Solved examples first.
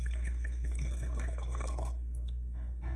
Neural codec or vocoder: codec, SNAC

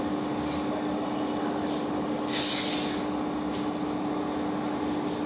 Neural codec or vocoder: none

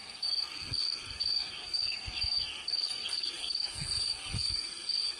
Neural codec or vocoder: codec, SNAC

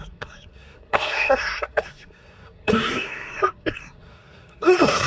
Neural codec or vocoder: codec, SNAC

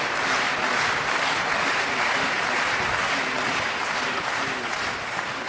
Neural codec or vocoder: none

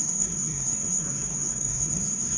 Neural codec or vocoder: codec, SNAC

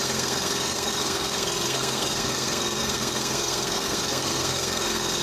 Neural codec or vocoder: codec, SNAC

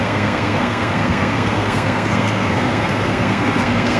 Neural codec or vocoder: codec, SNAC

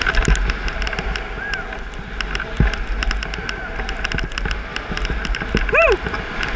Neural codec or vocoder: none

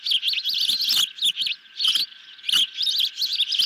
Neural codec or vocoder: none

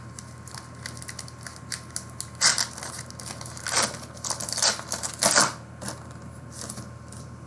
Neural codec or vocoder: none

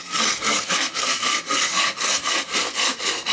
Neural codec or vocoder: codec, SNAC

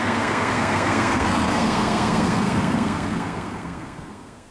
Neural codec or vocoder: codec, SNAC